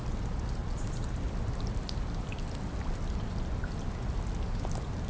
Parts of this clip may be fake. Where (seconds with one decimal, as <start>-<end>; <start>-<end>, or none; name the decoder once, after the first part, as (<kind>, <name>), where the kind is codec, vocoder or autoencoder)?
0.6-3.7 (vocoder, BigVGAN v2)